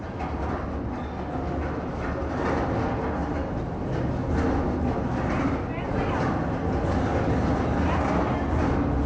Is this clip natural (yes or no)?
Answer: yes